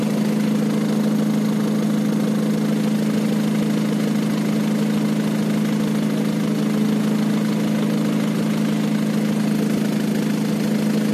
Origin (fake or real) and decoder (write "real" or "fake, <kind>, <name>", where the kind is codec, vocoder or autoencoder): real